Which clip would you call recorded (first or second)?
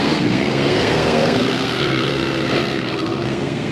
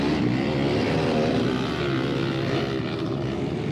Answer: second